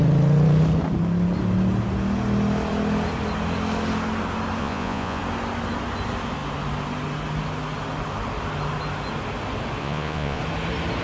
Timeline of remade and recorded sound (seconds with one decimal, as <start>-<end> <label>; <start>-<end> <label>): 0.0-4.6 recorded; 4.6-5.2 remade; 5.2-9.8 recorded; 9.8-10.4 remade; 10.4-11.0 recorded